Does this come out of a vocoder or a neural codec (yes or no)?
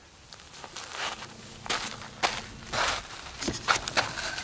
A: no